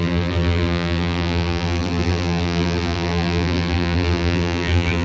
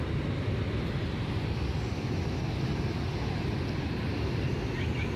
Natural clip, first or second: second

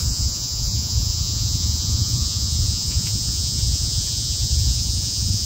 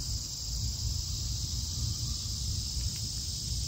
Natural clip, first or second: second